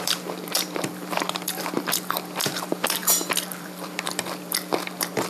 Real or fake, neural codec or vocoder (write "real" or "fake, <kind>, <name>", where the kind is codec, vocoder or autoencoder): fake, vocoder, BigVGAN v2